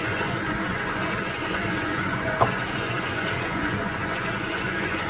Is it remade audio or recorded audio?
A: remade